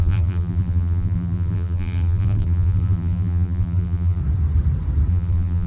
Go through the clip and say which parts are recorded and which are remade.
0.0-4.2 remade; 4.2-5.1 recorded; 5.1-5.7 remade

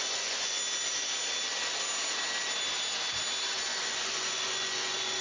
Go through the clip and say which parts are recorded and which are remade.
0.0-0.6 remade; 0.6-3.7 recorded; 3.7-5.2 remade

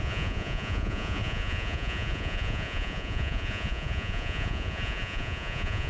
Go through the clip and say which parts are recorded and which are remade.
0.0-5.9 remade

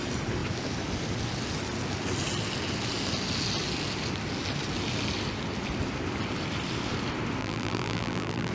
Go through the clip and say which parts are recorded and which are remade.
0.0-7.4 recorded; 7.4-8.5 remade

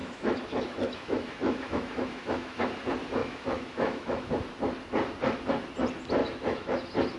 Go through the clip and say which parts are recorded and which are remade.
0.0-2.6 remade; 2.6-3.2 recorded; 3.2-4.2 remade; 4.2-6.2 recorded; 6.2-6.8 remade; 6.8-7.2 recorded

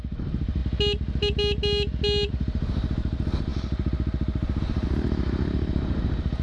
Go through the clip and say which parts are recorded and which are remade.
0.0-0.6 remade; 0.6-2.3 recorded; 2.3-6.4 remade